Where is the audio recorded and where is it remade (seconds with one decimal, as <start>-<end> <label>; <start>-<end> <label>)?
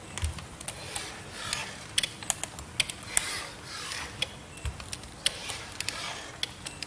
0.0-0.6 remade; 0.6-5.4 recorded; 5.4-6.1 remade; 6.1-6.9 recorded